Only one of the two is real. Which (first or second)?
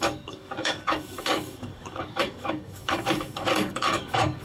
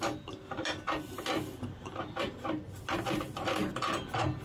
second